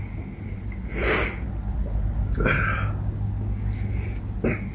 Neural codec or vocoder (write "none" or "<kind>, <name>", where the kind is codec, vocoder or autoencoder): none